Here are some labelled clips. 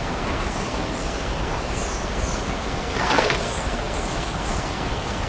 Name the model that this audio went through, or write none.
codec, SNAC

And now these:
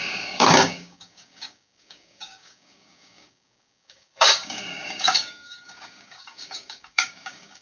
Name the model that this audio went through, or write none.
codec, DAC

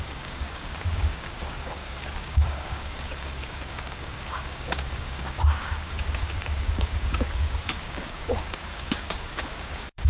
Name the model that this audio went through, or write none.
codec, DAC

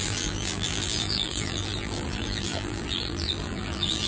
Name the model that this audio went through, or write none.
vocoder, BigVGAN v2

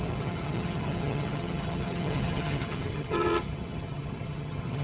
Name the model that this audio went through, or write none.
vocoder, HiFi-GAN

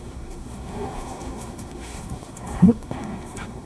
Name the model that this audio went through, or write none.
codec, SNAC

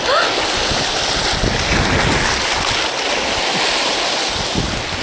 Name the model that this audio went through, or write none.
none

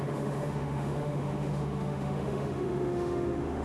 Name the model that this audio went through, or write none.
autoencoder, DAC-VAE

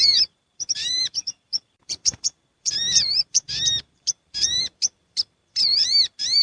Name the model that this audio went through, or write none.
vocoder, BigVGAN v2